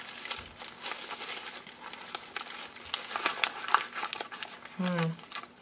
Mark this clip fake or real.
real